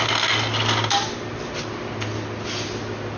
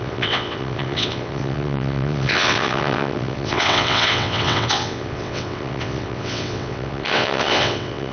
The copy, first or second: second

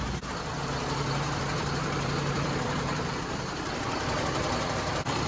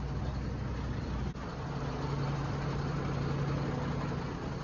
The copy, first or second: first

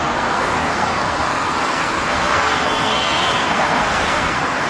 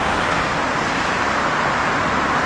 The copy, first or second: first